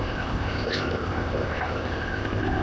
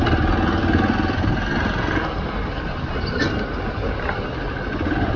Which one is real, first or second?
second